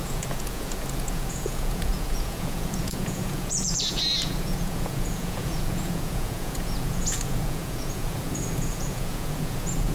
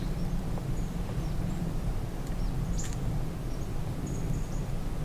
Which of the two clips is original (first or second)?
second